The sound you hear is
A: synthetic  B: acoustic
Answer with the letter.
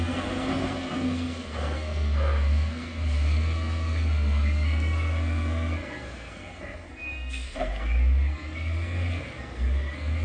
A